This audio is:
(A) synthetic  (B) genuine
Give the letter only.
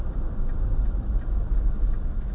B